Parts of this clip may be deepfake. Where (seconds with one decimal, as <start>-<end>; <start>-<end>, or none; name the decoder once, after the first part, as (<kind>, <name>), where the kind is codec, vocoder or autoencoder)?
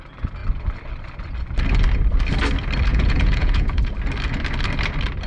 2.9-3.9 (vocoder, Vocos)